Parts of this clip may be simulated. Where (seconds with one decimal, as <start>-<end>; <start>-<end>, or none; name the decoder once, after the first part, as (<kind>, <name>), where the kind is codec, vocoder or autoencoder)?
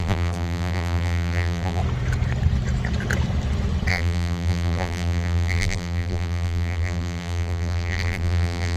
0.0-1.8 (vocoder, BigVGAN v2); 3.9-8.8